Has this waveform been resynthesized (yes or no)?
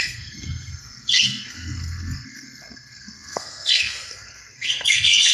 yes